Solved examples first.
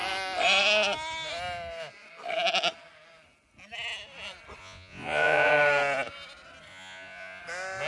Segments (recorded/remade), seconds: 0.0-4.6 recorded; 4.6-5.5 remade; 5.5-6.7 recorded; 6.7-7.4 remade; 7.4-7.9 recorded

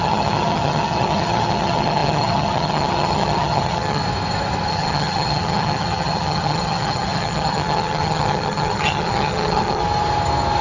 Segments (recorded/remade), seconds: 0.0-4.0 remade; 4.0-4.7 recorded; 4.7-9.8 remade; 9.8-10.6 recorded

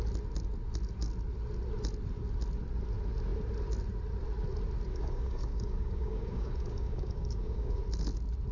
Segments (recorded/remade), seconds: 0.0-4.9 recorded; 4.9-7.8 remade; 7.8-8.5 recorded

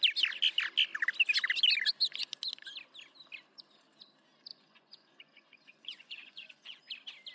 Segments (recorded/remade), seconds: 0.0-4.5 recorded; 4.5-6.8 remade; 6.8-7.3 recorded

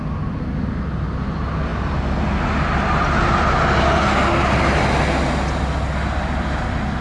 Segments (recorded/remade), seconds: 0.0-7.0 recorded